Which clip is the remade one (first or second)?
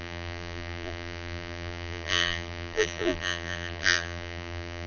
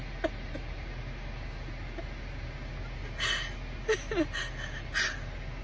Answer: first